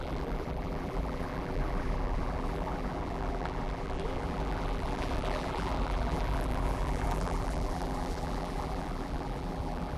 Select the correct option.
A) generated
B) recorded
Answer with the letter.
A